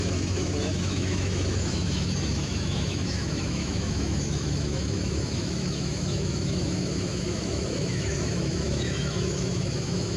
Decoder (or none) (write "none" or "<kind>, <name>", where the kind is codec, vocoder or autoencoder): autoencoder, DAC-VAE